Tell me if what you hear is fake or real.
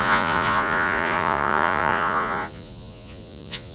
fake